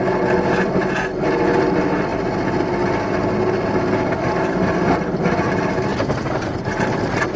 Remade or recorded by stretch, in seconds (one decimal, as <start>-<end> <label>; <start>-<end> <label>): 0.0-5.9 recorded; 5.9-7.0 remade; 7.0-7.4 recorded